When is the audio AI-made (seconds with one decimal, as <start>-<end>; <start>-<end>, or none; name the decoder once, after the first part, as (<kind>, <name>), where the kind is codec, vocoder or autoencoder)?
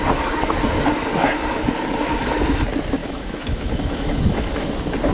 3.0-4.5 (autoencoder, DAC-VAE)